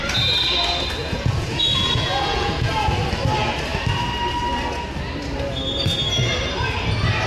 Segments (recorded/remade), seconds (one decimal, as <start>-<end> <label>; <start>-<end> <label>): 0.0-1.0 recorded; 1.0-2.7 remade; 2.7-7.3 recorded